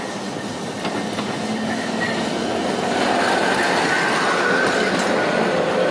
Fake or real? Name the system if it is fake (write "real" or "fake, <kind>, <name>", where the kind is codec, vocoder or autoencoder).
real